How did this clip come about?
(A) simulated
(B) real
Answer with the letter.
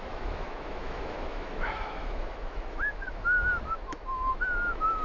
A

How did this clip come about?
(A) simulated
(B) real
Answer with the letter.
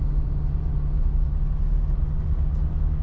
B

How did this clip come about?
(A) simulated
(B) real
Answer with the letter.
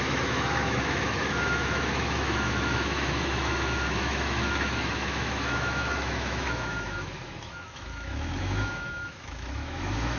A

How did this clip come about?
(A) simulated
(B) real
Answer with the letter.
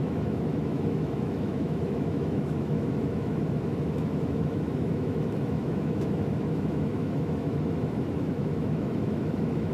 A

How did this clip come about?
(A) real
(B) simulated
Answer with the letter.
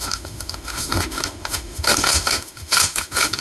B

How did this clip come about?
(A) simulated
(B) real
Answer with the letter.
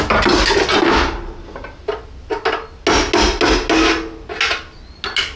B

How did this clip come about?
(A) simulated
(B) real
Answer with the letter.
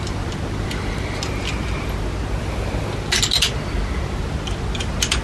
B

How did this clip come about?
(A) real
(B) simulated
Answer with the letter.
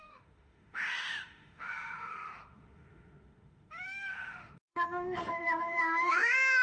B